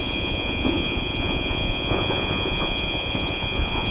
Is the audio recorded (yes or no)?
no